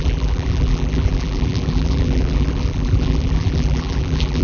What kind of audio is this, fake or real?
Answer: fake